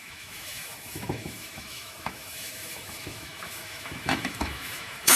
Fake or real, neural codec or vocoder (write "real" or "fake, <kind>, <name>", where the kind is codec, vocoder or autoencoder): fake, autoencoder, DAC-VAE